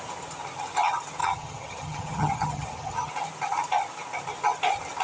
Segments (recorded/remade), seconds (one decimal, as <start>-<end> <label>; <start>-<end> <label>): 0.0-1.2 recorded; 1.2-3.1 remade; 3.1-5.0 recorded